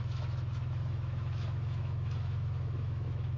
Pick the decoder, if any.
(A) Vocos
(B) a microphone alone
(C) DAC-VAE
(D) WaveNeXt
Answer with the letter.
C